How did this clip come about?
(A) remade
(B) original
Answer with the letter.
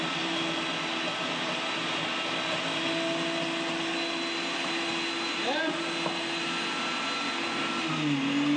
B